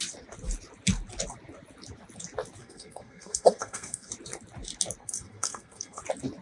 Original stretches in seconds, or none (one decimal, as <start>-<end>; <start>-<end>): 0.0-2.6; 4.1-5.0; 6.0-6.4